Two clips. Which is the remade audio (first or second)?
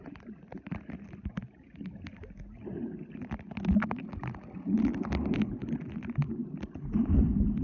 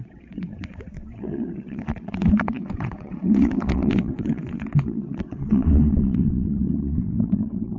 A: second